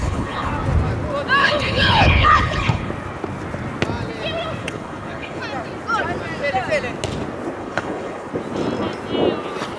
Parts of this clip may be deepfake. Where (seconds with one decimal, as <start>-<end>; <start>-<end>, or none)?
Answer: 0.0-0.5; 1.4-2.9; 4.6-5.4; 7.6-8.3